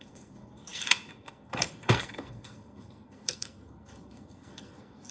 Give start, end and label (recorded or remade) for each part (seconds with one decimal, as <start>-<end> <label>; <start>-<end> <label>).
0.0-5.1 remade